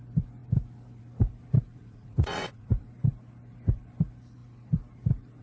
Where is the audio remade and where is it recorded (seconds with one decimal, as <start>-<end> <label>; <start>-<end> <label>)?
0.0-1.7 recorded; 1.7-2.7 remade; 2.7-5.4 recorded